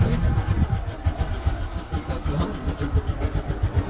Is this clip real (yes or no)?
yes